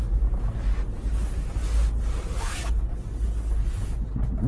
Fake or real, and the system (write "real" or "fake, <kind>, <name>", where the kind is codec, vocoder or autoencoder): real